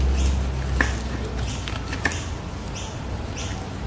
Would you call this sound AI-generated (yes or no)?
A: no